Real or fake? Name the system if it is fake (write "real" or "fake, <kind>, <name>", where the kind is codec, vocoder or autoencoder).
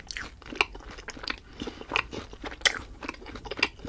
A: real